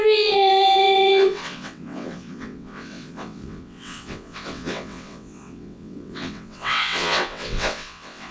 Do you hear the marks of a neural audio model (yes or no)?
yes